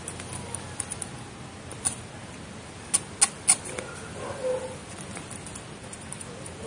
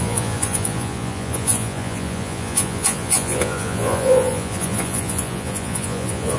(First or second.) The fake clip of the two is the second